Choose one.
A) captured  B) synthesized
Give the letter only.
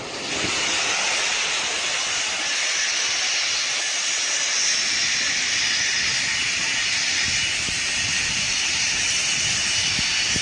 A